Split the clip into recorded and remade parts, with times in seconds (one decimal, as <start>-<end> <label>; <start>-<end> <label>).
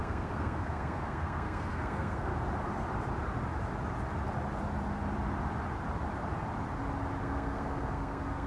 0.0-2.3 remade; 2.3-7.2 recorded; 7.2-8.5 remade